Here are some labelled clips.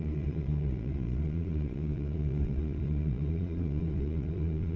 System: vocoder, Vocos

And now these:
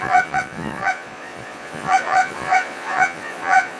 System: vocoder, Vocos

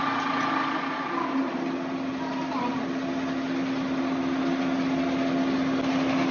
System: none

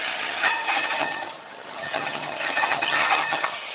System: vocoder, HiFi-GAN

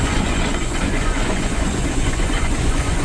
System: vocoder, Vocos